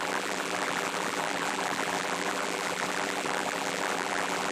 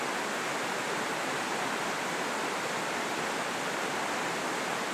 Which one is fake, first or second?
first